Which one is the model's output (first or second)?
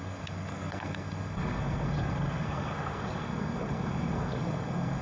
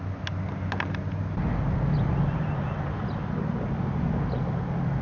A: first